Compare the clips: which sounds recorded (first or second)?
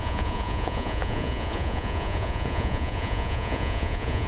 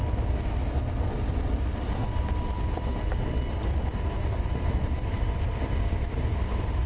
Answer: second